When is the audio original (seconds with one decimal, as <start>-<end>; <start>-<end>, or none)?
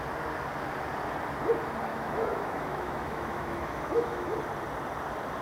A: 0.0-1.9; 4.4-5.4